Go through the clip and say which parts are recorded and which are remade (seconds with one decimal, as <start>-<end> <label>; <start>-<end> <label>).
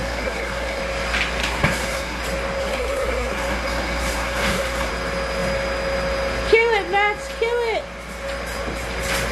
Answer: 0.0-0.8 remade; 0.8-1.4 recorded; 1.4-2.2 remade; 2.2-2.6 recorded; 2.6-4.9 remade; 4.9-9.3 recorded